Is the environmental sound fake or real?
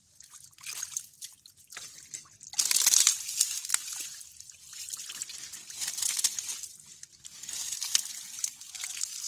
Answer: real